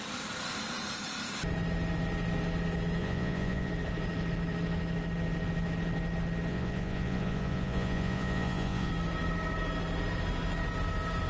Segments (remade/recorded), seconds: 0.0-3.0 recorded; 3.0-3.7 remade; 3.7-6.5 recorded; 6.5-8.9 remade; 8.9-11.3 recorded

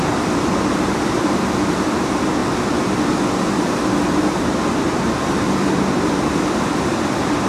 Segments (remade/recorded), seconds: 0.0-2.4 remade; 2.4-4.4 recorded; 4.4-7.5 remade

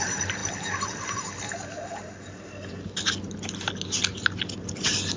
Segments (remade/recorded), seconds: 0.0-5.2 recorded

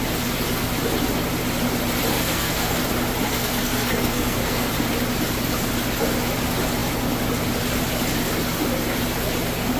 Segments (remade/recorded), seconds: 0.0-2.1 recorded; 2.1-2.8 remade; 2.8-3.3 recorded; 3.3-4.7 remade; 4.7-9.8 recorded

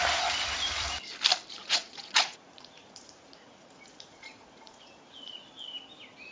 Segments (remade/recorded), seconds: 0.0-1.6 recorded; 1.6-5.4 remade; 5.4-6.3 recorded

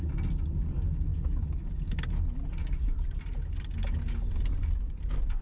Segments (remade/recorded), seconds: 0.0-5.4 recorded

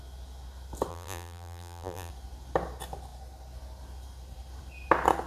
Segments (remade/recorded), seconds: 0.0-0.9 recorded; 0.9-2.1 remade; 2.1-5.3 recorded